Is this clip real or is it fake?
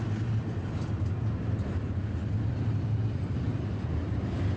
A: real